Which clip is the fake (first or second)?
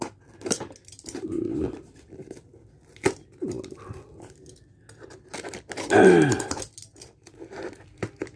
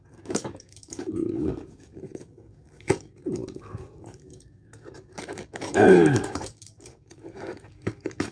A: second